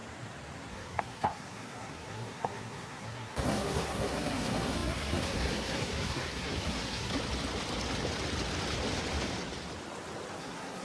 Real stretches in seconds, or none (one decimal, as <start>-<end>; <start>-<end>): 0.0-0.7; 7.1-10.4